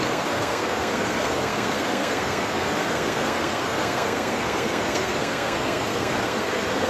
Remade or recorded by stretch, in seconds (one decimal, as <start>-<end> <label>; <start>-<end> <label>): 0.0-6.9 remade